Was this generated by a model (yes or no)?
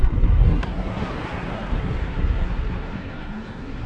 yes